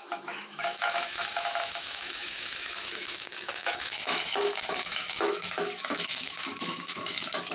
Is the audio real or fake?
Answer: fake